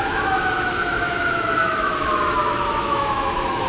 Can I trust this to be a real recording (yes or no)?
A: no